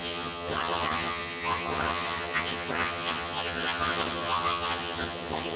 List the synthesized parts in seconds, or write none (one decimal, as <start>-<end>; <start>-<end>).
0.0-5.6